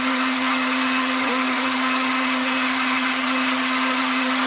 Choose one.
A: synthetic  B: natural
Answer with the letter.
A